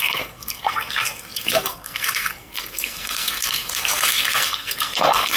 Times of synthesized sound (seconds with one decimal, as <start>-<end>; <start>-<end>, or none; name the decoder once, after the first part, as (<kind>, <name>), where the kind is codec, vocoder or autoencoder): 0.0-5.4 (codec, SNAC)